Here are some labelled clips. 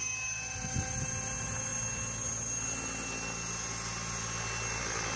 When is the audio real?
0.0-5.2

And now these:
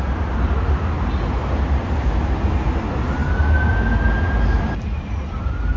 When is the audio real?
0.0-5.8

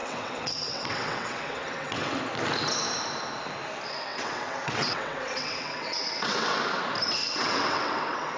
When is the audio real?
2.2-4.1; 6.8-7.2

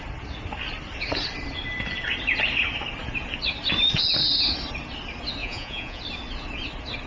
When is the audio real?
0.0-5.4; 6.0-7.1

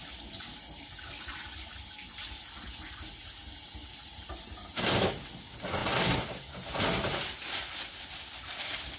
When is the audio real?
0.0-9.0